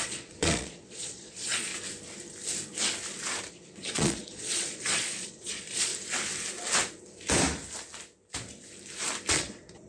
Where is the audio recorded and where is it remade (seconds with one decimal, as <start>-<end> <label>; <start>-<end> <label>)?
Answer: 0.0-1.7 remade; 1.7-3.5 recorded; 3.5-5.9 remade; 5.9-9.3 recorded; 9.3-9.9 remade